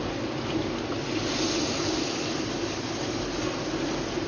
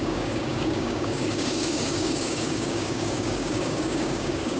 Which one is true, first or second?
first